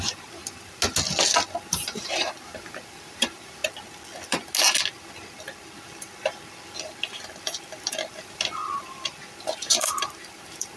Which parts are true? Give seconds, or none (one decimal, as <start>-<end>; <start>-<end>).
0.4-1.7; 3.6-8.1; 8.6-9.4